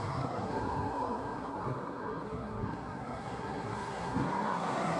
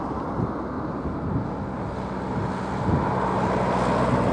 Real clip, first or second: second